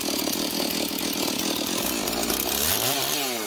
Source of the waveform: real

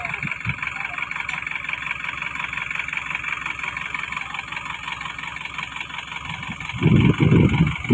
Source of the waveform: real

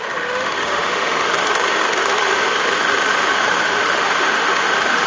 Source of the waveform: fake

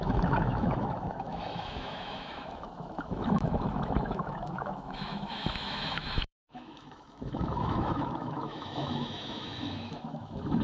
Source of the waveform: fake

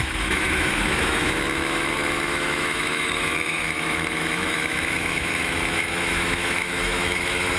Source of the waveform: fake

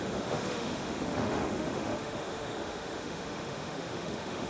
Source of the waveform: fake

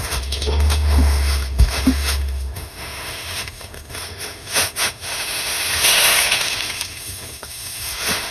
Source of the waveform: fake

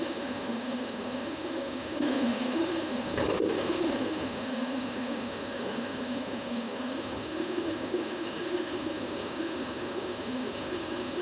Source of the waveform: fake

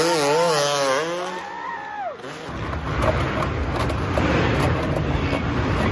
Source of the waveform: real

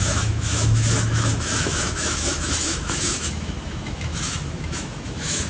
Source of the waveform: fake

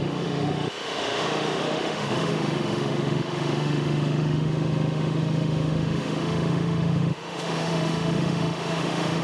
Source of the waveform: fake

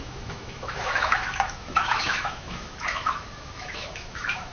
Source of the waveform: fake